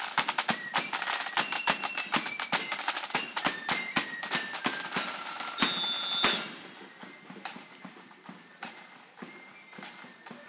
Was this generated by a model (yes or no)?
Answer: no